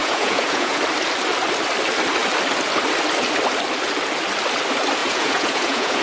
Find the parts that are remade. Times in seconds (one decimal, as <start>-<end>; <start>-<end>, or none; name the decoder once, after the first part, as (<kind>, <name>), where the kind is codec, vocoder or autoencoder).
0.0-0.8 (vocoder, Vocos); 5.0-6.0